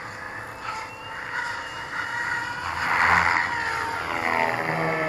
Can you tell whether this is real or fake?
real